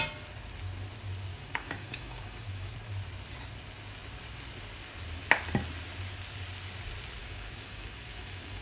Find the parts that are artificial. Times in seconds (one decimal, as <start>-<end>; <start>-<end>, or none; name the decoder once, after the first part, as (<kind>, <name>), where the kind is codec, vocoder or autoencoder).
1.3-2.7 (codec, DAC); 7.2-8.6